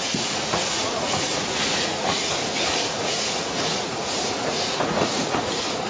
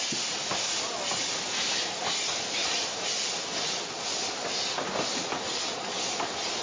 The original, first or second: second